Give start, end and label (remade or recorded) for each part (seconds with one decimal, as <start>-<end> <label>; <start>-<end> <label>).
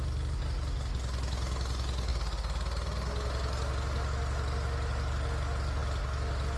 0.0-6.6 recorded